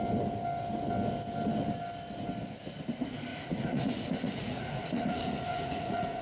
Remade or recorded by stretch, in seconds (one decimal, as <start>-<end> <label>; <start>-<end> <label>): 0.0-3.3 recorded; 3.3-6.2 remade